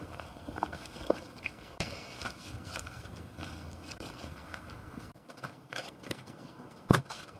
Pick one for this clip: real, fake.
fake